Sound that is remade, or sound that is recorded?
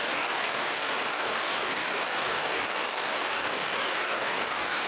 remade